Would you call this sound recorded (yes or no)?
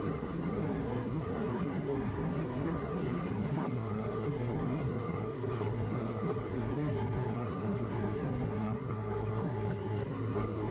no